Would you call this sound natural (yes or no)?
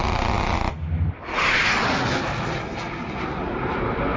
yes